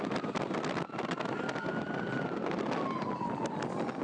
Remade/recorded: recorded